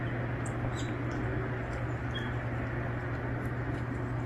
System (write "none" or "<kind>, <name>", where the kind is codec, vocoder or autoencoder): none